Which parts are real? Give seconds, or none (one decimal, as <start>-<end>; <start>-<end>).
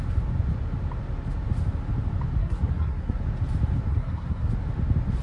0.0-2.4; 3.2-3.9; 4.5-5.2